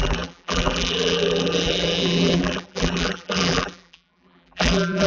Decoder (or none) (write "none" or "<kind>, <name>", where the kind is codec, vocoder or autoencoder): vocoder, BigVGAN v2